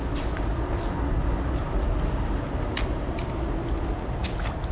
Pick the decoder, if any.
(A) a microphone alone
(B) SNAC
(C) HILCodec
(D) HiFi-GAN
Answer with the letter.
A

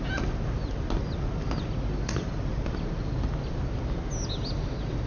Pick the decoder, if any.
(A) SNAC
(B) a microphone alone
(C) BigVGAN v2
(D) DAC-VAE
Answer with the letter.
B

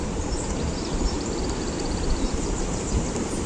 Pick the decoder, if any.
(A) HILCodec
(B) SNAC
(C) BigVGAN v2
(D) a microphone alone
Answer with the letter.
C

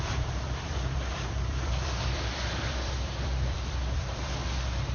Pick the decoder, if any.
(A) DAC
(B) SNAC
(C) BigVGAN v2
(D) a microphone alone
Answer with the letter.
C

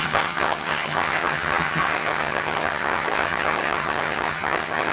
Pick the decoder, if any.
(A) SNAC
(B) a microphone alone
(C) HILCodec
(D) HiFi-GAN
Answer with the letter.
D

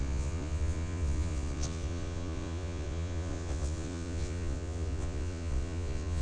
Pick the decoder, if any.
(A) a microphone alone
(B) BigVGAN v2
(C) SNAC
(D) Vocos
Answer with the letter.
D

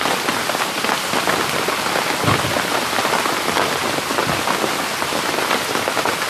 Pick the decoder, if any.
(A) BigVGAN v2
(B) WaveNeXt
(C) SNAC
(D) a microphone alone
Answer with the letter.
D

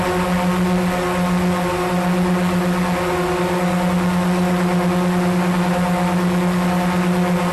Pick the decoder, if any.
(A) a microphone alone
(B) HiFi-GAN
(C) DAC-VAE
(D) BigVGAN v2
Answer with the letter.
A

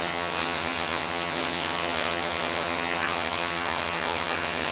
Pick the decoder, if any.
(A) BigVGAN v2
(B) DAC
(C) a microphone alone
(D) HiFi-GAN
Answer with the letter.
D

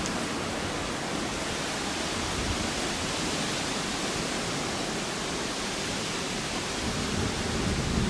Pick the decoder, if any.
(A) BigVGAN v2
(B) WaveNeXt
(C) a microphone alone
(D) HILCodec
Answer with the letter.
C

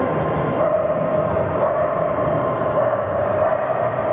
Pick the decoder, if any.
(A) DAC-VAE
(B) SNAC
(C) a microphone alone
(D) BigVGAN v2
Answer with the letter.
D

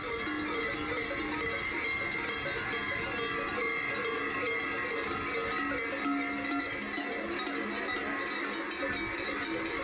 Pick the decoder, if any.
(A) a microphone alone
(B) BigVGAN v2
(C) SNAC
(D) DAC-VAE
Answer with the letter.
A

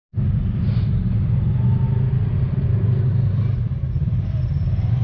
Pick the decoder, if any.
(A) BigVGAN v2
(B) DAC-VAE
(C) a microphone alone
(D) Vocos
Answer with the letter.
A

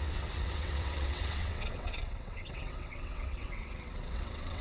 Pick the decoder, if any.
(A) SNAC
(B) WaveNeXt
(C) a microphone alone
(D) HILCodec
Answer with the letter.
B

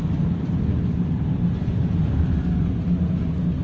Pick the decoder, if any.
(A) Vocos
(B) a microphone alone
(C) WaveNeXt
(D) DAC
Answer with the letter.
B